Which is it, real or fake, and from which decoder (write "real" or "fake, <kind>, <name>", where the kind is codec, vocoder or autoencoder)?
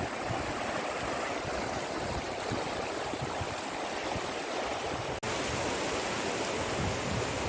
real